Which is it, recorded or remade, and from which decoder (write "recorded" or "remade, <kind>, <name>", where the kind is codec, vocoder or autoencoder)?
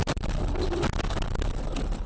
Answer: recorded